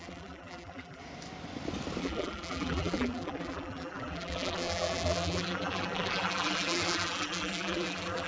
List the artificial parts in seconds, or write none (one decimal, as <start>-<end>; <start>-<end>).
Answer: 0.0-1.0; 2.0-8.3